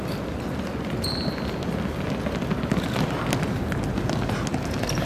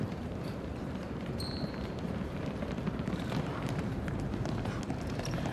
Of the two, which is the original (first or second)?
first